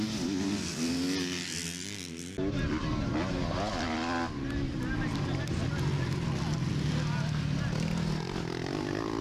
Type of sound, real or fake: real